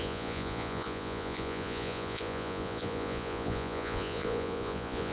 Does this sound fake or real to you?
fake